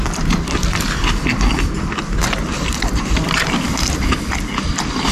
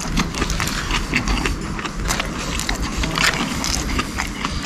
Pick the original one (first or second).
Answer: second